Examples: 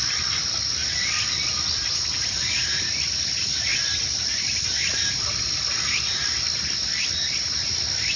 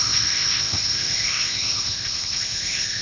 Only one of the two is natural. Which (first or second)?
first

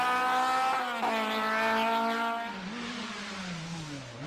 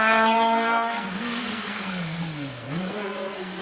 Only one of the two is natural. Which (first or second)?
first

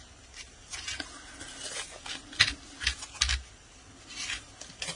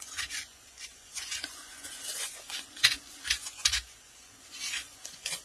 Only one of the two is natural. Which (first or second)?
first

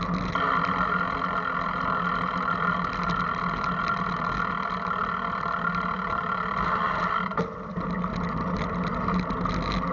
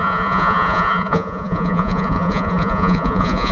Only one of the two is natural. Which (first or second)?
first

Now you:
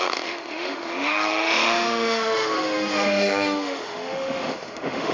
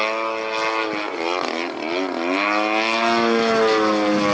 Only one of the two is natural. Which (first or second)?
second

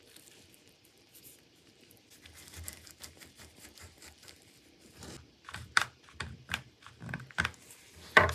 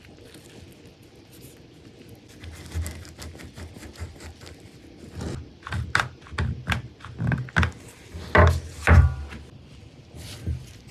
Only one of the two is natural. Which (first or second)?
second